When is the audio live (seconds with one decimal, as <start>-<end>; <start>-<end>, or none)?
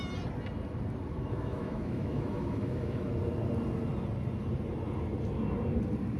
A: 0.0-1.1; 3.1-6.2